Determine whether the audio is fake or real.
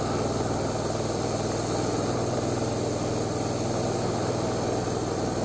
real